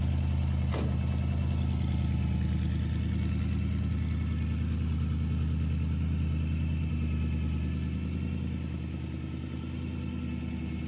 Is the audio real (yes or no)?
yes